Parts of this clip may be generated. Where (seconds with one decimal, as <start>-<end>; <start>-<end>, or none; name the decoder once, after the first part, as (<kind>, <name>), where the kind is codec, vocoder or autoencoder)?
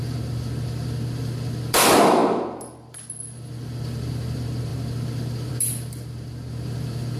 0.0-2.2 (vocoder, BigVGAN v2); 2.9-7.2